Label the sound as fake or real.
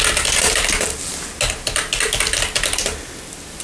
real